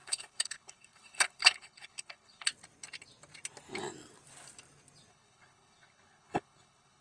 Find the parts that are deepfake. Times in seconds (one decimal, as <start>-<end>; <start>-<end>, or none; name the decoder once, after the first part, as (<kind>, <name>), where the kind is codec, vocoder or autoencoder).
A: 0.0-2.5 (codec, HILCodec); 5.1-7.0